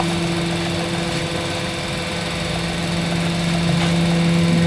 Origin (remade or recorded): recorded